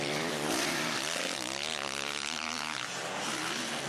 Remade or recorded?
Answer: recorded